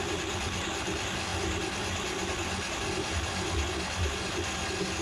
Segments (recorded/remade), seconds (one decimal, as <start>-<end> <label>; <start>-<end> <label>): 0.0-5.0 recorded